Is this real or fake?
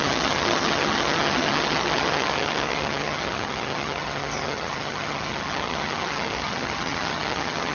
fake